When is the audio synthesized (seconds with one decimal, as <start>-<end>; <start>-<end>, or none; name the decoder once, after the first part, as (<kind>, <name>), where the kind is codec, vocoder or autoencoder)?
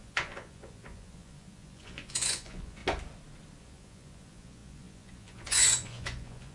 0.0-2.8 (vocoder, Vocos); 3.6-6.5